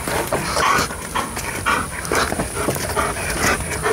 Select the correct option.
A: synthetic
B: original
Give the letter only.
B